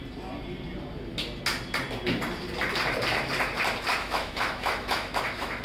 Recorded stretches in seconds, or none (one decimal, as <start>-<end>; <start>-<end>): 0.0-3.9